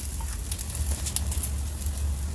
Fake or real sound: real